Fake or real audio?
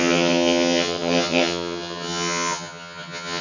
fake